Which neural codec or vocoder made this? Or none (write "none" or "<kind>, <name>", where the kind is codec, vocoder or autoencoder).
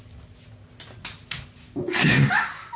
none